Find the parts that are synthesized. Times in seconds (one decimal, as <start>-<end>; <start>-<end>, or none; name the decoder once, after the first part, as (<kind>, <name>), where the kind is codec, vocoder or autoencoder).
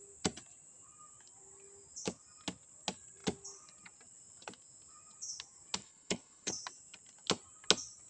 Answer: 5.8-6.5 (codec, HILCodec)